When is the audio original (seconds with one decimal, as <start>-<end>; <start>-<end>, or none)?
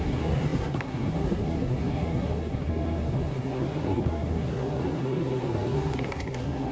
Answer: none